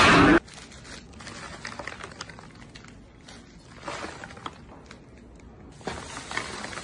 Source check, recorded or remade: recorded